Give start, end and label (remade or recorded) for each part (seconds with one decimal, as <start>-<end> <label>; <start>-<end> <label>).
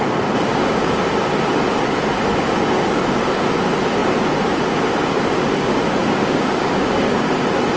0.0-0.5 recorded; 0.5-1.0 remade; 1.0-2.4 recorded; 2.4-3.5 remade; 3.5-6.0 recorded; 6.0-7.3 remade; 7.3-7.8 recorded